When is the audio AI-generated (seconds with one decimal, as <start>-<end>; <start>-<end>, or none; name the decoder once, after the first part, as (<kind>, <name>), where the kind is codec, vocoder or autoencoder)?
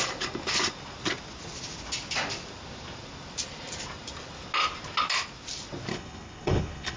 5.9-7.0 (codec, HILCodec)